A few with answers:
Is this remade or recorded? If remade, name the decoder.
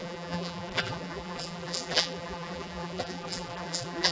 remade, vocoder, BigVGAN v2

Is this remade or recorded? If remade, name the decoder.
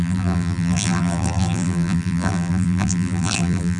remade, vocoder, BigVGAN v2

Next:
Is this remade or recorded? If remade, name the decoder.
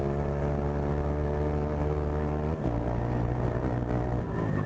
recorded